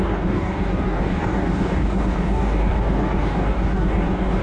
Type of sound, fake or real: fake